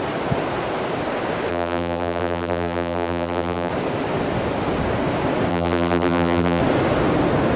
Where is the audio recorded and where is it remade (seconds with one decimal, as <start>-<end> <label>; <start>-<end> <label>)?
0.0-1.5 recorded; 1.5-3.7 remade; 3.7-5.5 recorded; 5.5-6.6 remade; 6.6-7.6 recorded